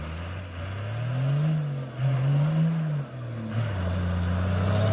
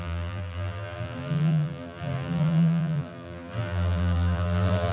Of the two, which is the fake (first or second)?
second